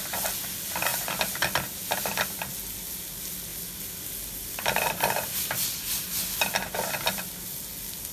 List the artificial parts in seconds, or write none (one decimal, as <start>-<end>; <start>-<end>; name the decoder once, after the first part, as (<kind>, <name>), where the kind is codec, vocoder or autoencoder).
none

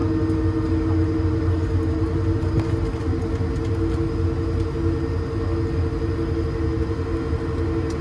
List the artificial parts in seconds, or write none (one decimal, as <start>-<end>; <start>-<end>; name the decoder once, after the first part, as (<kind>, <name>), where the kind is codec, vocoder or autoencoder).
none

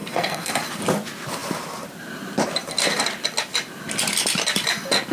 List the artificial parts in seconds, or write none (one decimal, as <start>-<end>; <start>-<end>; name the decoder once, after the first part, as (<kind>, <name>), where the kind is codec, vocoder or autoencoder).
0.0-0.5 (codec, SNAC)

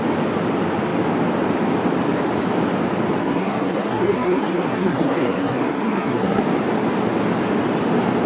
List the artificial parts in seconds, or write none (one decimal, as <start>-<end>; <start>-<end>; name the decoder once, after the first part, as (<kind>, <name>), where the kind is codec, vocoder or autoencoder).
3.2-6.4 (codec, SNAC)